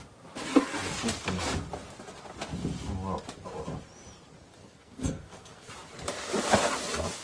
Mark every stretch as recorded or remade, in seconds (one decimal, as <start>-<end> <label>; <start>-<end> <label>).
0.0-4.6 recorded; 4.6-5.7 remade; 5.7-7.2 recorded